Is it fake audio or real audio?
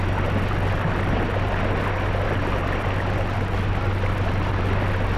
real